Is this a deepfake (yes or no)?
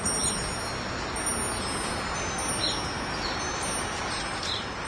no